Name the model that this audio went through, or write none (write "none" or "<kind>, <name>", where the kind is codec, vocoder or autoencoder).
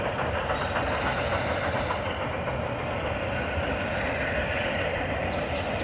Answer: none